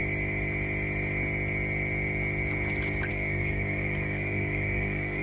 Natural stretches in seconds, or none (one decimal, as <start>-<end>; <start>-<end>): 0.0-3.1